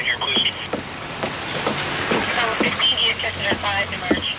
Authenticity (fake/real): real